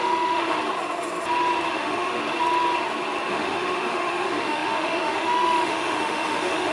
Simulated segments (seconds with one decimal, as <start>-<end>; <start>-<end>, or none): 0.0-0.6; 1.7-2.2; 3.3-6.7